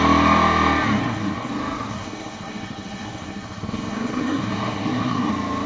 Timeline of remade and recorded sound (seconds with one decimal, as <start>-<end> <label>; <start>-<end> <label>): 0.0-1.0 recorded; 1.0-1.5 remade; 1.5-1.9 recorded; 1.9-5.3 remade; 5.3-5.7 recorded